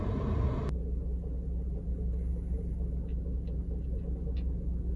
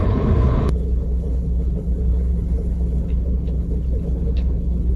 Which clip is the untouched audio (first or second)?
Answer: first